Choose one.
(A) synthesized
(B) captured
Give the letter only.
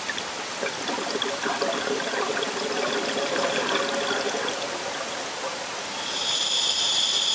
B